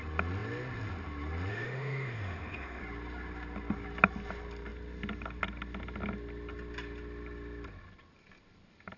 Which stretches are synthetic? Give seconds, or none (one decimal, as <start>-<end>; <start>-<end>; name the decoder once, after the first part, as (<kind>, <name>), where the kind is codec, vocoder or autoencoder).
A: 1.5-2.8 (autoencoder, DAC-VAE)